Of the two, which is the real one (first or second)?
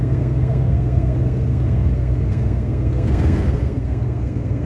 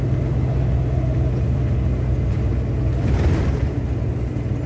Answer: second